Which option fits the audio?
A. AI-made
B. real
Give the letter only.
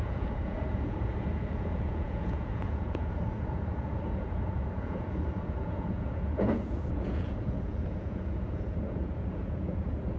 A